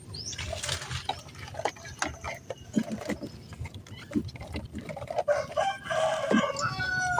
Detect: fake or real real